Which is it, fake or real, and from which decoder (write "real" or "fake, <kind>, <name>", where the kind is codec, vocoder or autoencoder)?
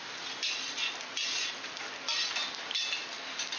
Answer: real